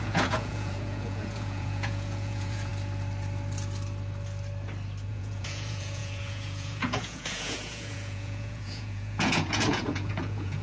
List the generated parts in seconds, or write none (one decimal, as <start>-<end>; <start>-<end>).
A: 0.0-2.7; 5.1-10.6